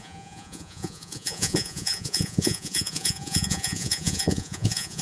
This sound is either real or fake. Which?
fake